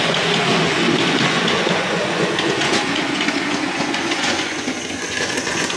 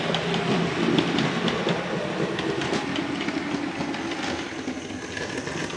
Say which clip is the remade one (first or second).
first